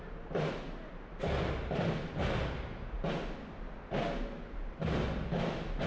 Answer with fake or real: real